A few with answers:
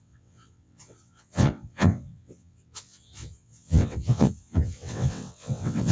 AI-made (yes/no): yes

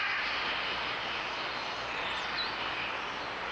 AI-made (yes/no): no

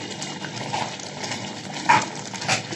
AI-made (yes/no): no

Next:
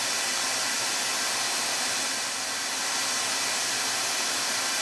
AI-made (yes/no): no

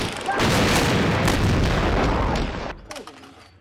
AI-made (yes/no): no